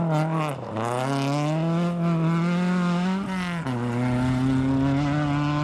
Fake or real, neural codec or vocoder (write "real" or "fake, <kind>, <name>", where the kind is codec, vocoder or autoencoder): real